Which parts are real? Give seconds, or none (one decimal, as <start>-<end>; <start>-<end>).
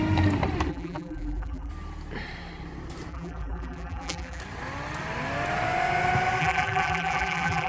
0.0-0.7; 1.7-3.1; 4.4-6.4